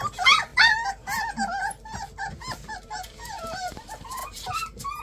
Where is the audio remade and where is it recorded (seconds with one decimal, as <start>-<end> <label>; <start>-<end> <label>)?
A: 0.0-0.5 remade; 0.5-2.7 recorded; 2.7-5.0 remade

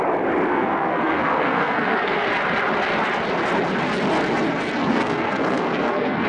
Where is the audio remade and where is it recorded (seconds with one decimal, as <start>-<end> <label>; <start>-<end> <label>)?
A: 0.0-0.5 recorded; 0.5-2.3 remade; 2.3-4.9 recorded; 4.9-6.3 remade

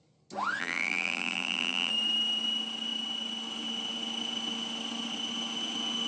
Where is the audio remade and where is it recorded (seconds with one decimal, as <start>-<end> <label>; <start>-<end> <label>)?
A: 0.0-0.6 recorded; 0.6-1.9 remade; 1.9-6.1 recorded

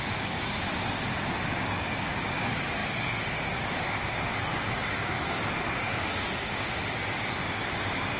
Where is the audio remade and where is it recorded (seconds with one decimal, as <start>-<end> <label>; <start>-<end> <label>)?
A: 0.0-0.7 remade; 0.7-1.6 recorded; 1.6-8.2 remade